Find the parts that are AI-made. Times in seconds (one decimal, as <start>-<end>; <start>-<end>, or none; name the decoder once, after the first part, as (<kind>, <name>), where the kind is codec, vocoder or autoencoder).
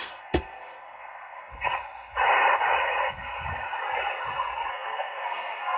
0.0-1.5 (codec, SNAC); 4.7-5.8